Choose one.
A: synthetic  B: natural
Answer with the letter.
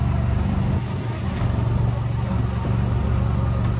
B